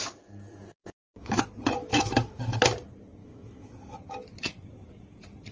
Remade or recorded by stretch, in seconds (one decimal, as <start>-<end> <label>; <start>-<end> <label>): 0.0-0.8 recorded; 0.8-1.4 remade; 1.4-1.9 recorded; 1.9-2.6 remade; 2.6-3.2 recorded; 3.2-3.7 remade; 3.7-5.5 recorded

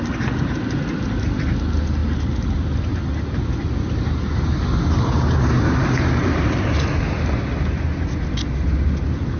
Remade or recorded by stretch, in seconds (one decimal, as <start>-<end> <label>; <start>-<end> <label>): 0.0-9.4 recorded